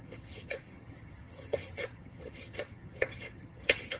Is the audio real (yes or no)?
no